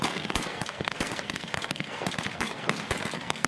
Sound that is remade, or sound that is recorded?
remade